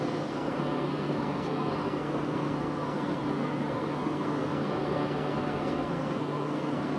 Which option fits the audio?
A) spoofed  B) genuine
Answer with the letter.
A